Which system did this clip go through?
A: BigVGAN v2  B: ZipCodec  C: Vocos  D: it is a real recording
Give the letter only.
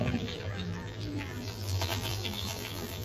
A